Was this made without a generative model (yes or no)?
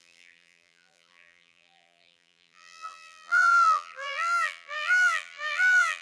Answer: no